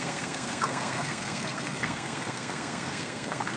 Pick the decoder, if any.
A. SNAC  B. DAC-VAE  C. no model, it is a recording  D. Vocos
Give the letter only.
A